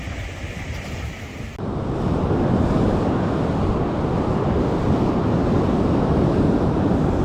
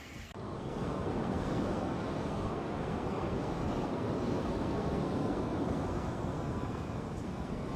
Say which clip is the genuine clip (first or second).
first